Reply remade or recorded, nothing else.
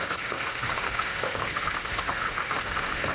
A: remade